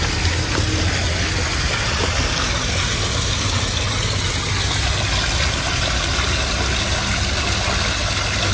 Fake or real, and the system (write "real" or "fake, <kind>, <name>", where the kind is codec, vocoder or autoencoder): real